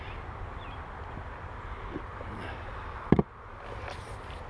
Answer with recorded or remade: recorded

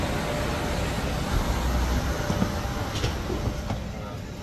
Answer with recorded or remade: recorded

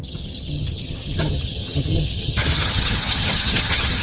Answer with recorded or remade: remade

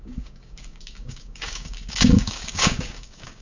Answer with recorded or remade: remade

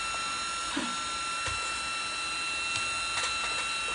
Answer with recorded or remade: recorded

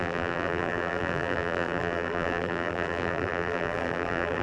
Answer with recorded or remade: remade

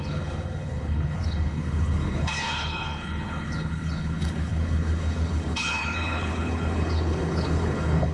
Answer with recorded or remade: remade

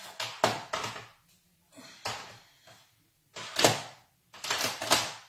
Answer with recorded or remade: recorded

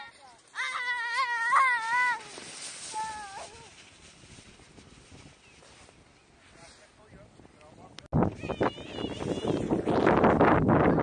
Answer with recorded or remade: recorded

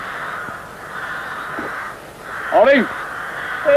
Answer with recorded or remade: recorded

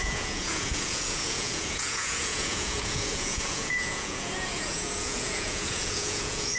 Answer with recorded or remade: remade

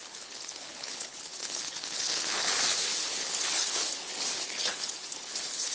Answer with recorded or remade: remade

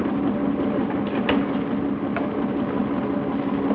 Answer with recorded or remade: recorded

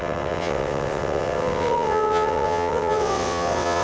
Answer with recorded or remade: remade